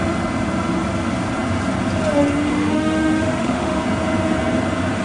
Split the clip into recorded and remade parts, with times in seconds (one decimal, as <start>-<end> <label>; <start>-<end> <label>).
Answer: 0.0-2.5 recorded; 2.5-3.8 remade; 3.8-5.0 recorded